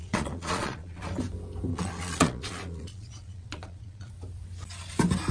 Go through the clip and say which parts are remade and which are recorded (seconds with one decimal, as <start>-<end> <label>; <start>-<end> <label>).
0.0-1.0 remade; 1.0-1.7 recorded; 1.7-4.1 remade; 4.1-5.3 recorded